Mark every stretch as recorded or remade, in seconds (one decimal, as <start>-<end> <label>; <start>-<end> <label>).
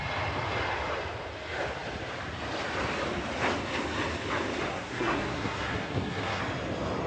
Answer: 0.0-4.7 recorded; 4.7-6.4 remade; 6.4-7.1 recorded